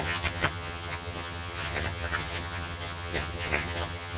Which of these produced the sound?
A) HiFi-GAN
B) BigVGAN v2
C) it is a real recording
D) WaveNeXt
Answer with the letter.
A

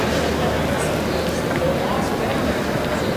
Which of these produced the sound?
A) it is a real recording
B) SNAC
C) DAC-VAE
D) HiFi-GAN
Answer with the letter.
A